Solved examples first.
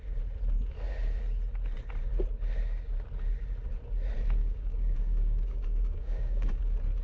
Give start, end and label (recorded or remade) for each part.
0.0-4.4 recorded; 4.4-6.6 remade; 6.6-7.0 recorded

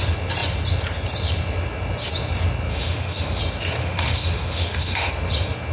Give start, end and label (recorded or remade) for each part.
0.0-2.7 recorded; 2.7-3.4 remade; 3.4-3.8 recorded; 3.8-5.1 remade; 5.1-5.7 recorded